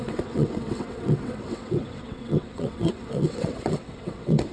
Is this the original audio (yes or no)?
no